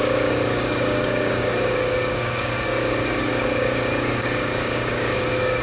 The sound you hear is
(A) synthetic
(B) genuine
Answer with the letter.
A